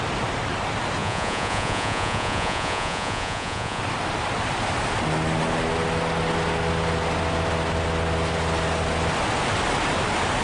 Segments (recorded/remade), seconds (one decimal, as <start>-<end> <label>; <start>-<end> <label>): 0.0-1.0 recorded; 1.0-3.8 remade; 3.8-10.4 recorded

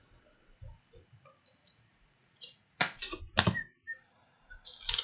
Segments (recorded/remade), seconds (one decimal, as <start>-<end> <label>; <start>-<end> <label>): 0.0-1.6 recorded; 1.6-3.2 remade; 3.2-5.0 recorded

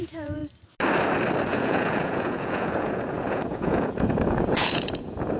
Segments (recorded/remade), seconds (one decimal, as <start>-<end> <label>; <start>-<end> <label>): 0.0-0.4 remade; 0.4-1.4 recorded; 1.4-5.4 remade

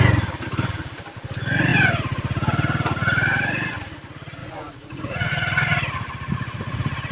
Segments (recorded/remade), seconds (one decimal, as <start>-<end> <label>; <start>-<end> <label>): 0.0-4.4 recorded; 4.4-5.3 remade; 5.3-7.1 recorded

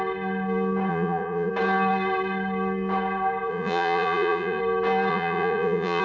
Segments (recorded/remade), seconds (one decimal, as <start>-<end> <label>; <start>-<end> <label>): 0.0-0.9 recorded; 0.9-1.5 remade; 1.5-3.5 recorded; 3.5-4.6 remade; 4.6-5.1 recorded; 5.1-6.0 remade

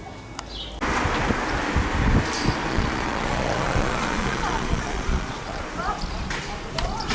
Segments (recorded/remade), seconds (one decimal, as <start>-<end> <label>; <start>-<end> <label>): 0.0-2.7 recorded; 2.7-5.7 remade; 5.7-7.1 recorded